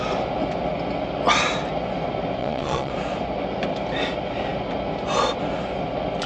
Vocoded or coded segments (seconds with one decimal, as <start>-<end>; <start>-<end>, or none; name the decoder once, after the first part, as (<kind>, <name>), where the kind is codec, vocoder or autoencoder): 2.4-2.9 (vocoder, Vocos)